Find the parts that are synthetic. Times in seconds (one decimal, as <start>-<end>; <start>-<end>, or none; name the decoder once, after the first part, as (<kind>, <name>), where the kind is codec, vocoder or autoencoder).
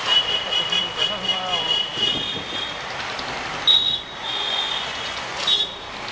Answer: 3.7-5.4 (vocoder, Vocos)